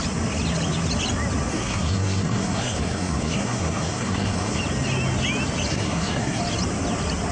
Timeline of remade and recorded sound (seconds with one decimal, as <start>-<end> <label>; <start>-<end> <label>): 0.0-1.5 recorded; 1.5-4.6 remade; 4.6-5.7 recorded; 5.7-6.4 remade; 6.4-7.3 recorded